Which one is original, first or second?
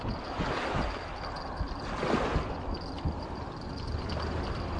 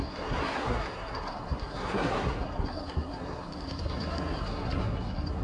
first